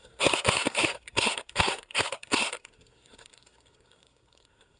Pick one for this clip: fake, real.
fake